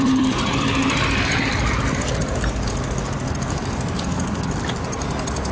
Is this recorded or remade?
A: remade